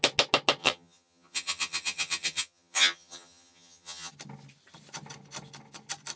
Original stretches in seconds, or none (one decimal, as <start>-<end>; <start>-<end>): 0.0-0.6; 4.1-6.2